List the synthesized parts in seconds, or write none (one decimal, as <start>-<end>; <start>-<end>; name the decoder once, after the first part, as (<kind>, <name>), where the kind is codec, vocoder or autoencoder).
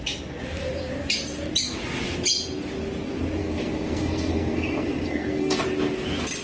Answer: 3.4-5.6 (codec, SNAC)